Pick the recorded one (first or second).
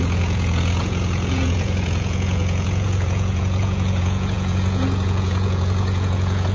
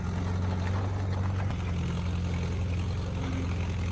second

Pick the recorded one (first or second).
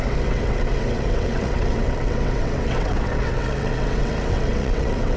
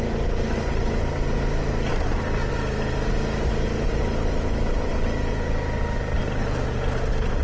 second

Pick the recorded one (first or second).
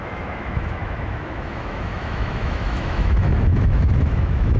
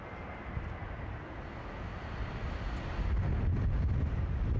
second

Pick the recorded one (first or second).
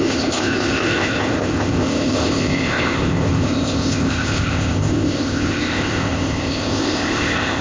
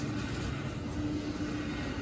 second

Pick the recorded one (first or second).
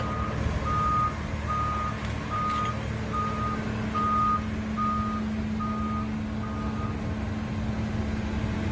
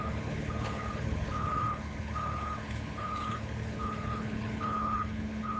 first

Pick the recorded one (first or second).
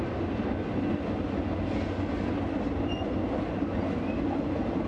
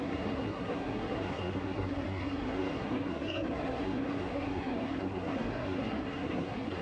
first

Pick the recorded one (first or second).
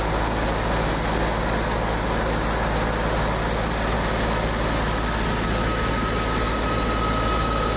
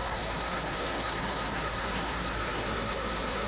first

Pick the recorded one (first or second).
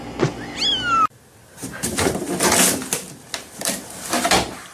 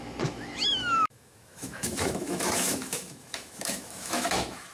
first